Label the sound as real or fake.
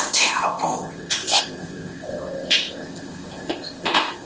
fake